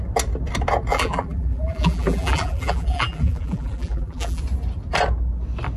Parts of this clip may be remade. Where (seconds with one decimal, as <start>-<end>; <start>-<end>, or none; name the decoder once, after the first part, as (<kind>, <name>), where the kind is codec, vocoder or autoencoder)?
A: 0.9-4.4 (vocoder, BigVGAN v2)